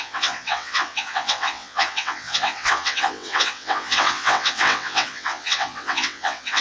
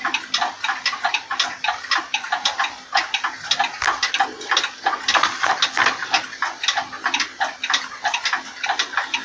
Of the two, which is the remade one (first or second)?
first